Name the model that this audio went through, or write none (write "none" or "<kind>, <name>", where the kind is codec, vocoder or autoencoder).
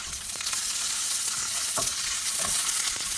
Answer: vocoder, Vocos